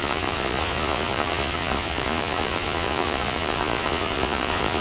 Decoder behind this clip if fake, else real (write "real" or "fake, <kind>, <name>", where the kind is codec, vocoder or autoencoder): fake, vocoder, Vocos